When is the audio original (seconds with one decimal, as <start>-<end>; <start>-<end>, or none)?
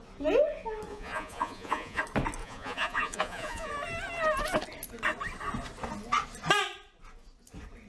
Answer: 0.0-0.9; 2.0-2.4; 3.7-7.9